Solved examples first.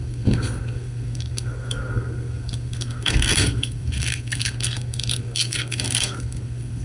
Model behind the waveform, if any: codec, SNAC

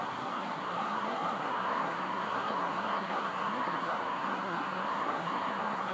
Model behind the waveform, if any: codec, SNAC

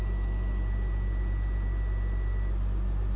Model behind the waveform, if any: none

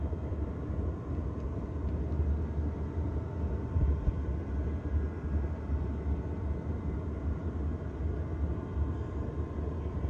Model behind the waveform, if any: none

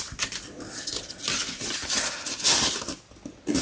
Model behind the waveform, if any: none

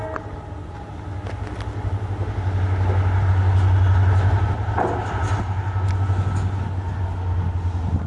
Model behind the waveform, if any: none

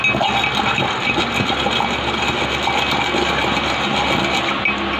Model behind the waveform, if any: none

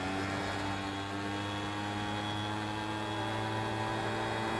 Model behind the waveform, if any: none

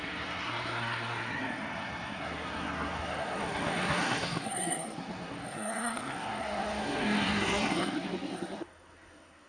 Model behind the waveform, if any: codec, SNAC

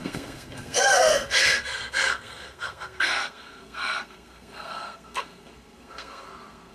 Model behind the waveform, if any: codec, SNAC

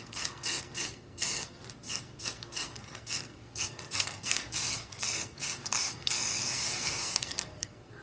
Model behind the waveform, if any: codec, SNAC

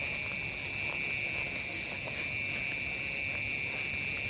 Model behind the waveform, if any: none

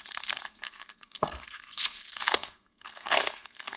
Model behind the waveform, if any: codec, SNAC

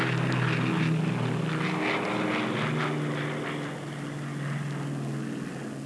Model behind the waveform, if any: none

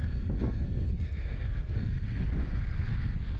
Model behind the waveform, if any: codec, SNAC